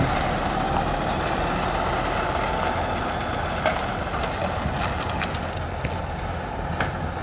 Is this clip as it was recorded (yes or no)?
yes